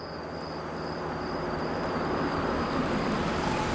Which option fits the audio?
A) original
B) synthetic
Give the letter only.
B